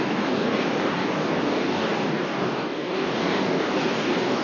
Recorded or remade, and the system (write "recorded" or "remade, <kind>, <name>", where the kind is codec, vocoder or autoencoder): remade, codec, DAC